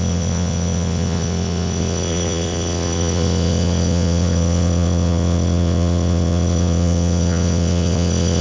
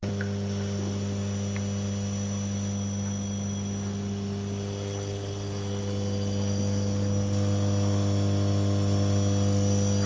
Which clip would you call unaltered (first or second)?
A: second